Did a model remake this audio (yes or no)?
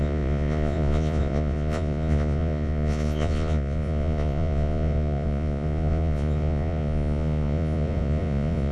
yes